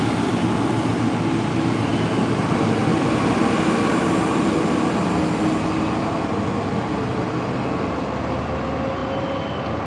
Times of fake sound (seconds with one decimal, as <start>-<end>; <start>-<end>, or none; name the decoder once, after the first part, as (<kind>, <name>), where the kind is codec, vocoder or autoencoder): none

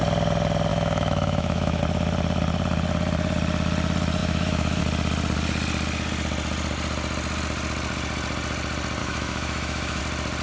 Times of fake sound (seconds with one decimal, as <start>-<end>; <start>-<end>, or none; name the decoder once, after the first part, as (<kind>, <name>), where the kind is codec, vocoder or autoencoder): 0.7-1.8 (autoencoder, DAC-VAE); 4.2-4.8; 9.0-10.0

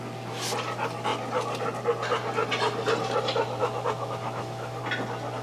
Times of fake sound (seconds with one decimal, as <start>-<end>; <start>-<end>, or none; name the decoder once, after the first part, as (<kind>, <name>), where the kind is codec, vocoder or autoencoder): 3.6-4.8 (autoencoder, DAC-VAE)

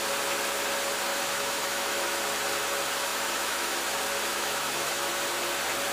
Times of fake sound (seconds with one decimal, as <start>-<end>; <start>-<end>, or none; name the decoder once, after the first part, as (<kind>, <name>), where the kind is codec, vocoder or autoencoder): 1.1-2.2 (autoencoder, DAC-VAE); 3.1-3.8; 4.3-5.1

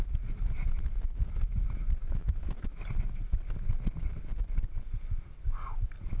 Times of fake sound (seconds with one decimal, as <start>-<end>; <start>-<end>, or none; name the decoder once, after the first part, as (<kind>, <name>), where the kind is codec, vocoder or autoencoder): 2.0-2.8 (autoencoder, DAC-VAE)

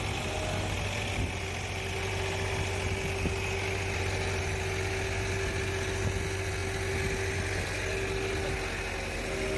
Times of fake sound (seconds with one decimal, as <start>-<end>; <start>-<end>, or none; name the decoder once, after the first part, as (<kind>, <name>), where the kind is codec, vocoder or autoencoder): none